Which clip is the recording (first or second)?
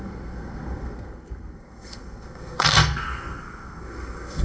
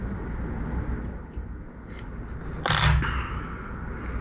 second